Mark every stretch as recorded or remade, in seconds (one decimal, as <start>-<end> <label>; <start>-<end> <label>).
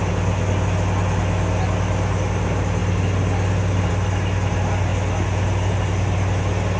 0.0-6.8 recorded